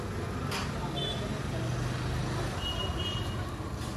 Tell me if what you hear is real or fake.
real